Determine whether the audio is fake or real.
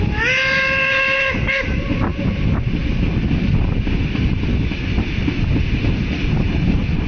real